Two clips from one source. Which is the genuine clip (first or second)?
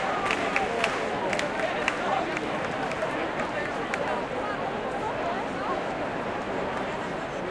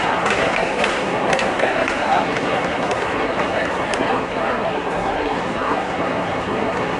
first